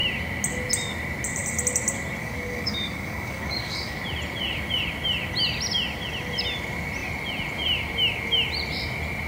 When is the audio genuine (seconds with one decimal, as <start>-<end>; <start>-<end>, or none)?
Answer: 0.0-2.2; 4.0-9.3